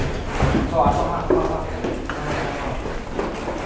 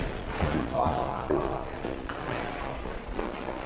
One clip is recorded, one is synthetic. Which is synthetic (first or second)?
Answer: second